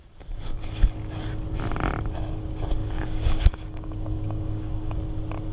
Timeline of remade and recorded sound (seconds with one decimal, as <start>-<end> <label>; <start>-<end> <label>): 0.0-2.8 recorded; 2.8-5.0 remade; 5.0-5.5 recorded